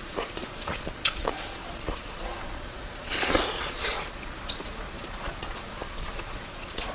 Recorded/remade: remade